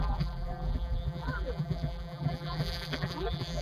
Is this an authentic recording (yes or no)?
no